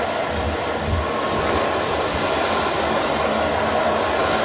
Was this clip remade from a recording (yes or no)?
no